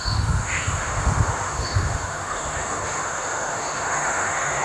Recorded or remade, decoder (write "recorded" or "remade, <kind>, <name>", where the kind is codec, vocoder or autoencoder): remade, autoencoder, DAC-VAE